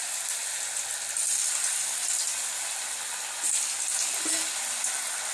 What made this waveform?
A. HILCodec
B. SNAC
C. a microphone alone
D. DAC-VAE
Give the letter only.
C